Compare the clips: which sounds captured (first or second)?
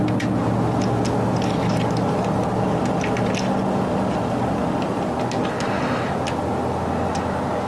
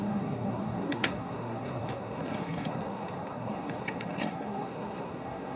first